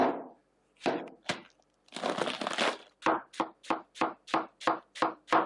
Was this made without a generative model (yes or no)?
yes